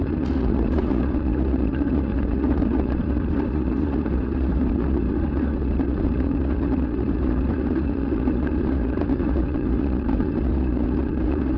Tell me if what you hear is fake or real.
fake